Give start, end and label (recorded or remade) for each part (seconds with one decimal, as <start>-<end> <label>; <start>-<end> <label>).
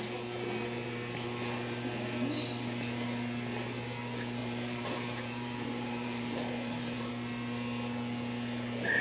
0.0-4.4 recorded; 4.4-7.1 remade; 7.1-9.0 recorded